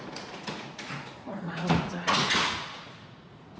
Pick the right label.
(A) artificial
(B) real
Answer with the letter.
A